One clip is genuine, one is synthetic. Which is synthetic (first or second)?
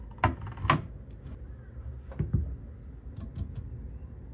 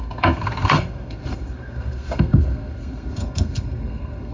second